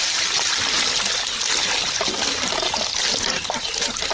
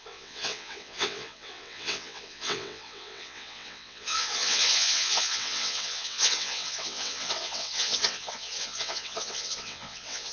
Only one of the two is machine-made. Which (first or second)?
second